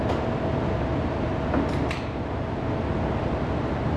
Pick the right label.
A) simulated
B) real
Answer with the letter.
B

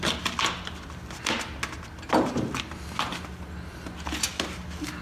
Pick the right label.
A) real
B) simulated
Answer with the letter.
A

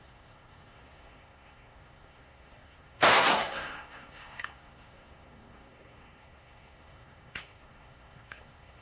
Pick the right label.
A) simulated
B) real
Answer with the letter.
A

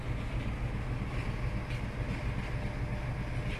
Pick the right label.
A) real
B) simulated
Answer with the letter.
A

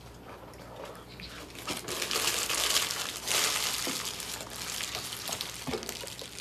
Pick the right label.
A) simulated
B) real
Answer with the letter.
B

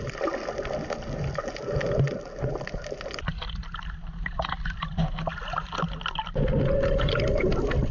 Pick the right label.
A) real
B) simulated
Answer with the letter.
A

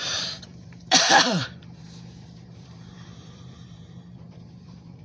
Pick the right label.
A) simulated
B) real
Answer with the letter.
A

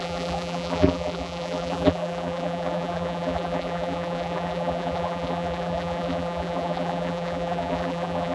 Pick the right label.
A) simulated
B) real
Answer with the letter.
A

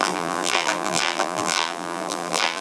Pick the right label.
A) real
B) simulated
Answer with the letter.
B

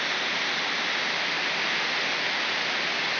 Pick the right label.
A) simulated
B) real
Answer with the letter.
B